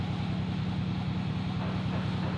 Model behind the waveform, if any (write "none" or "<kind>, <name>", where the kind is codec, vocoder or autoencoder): none